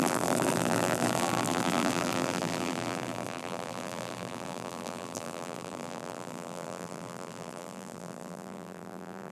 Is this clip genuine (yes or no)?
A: no